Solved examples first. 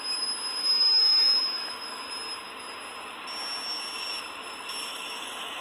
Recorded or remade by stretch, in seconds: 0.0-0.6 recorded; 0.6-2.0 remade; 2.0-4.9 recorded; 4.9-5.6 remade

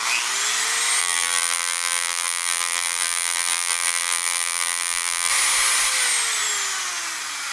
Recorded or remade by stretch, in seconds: 0.0-1.0 recorded; 1.0-5.3 remade; 5.3-7.5 recorded

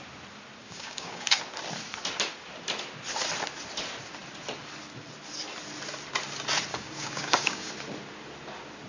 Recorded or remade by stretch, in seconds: 0.0-0.6 recorded; 0.6-1.4 remade; 1.4-6.7 recorded; 6.7-7.7 remade; 7.7-8.9 recorded

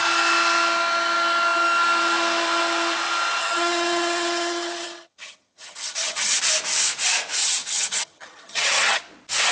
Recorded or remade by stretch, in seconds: 0.0-3.4 recorded; 3.4-6.4 remade; 6.4-7.4 recorded; 7.4-9.0 remade; 9.0-9.5 recorded

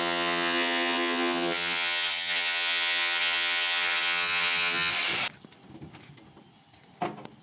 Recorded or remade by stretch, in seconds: 0.0-4.9 remade; 4.9-7.4 recorded